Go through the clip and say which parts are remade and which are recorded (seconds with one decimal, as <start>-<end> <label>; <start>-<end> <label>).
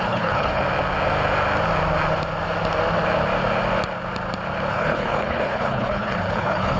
0.0-0.6 remade; 0.6-4.7 recorded; 4.7-6.8 remade